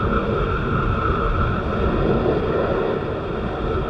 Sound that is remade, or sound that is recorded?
recorded